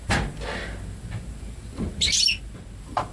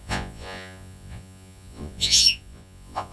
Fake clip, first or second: second